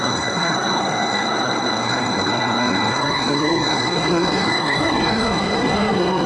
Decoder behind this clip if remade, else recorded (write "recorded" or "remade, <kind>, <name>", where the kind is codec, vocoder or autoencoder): remade, codec, SNAC